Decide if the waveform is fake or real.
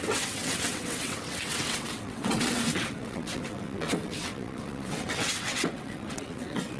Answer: fake